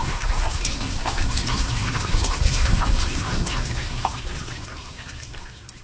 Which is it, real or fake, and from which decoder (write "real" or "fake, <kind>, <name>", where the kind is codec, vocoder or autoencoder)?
fake, codec, SNAC